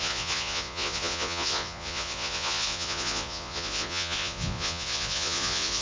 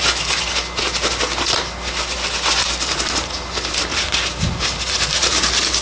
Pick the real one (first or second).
second